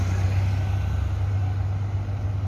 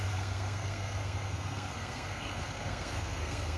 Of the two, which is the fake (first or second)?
second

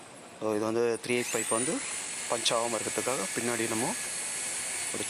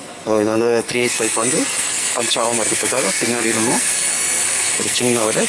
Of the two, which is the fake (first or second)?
second